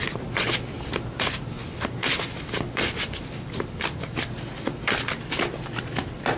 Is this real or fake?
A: real